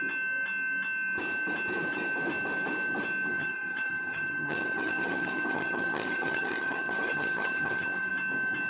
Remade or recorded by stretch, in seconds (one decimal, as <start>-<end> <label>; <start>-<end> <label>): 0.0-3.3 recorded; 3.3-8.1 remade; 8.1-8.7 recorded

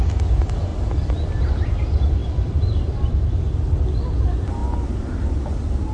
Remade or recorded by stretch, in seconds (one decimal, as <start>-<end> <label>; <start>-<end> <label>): 0.0-0.7 recorded; 0.7-1.4 remade; 1.4-2.2 recorded; 2.2-3.1 remade; 3.1-5.9 recorded

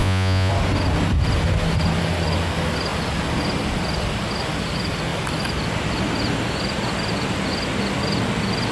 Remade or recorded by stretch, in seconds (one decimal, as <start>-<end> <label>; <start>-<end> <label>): 0.0-0.5 remade; 0.5-8.7 recorded

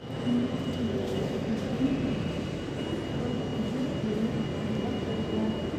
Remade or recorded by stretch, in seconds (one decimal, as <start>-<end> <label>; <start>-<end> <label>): 0.0-1.0 recorded; 1.0-1.6 remade; 1.6-5.8 recorded